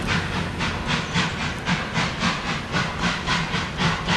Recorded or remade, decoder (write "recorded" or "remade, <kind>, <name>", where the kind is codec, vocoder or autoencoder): recorded